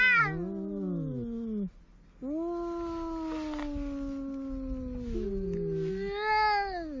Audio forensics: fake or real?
real